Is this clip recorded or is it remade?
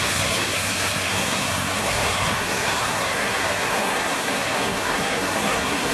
remade